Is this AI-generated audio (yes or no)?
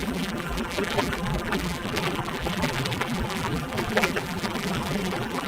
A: yes